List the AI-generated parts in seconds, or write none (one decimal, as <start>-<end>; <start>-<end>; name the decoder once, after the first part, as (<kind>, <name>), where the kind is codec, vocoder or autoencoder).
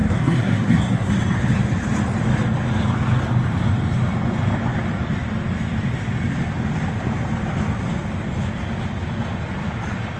0.0-1.1 (codec, SNAC)